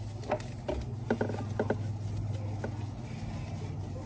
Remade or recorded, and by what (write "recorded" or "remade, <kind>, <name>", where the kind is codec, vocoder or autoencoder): recorded